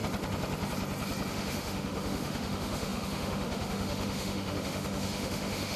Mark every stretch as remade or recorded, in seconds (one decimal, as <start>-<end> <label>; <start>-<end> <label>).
0.0-1.3 recorded; 1.3-5.8 remade